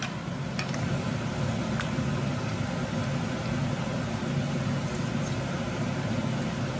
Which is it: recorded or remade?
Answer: recorded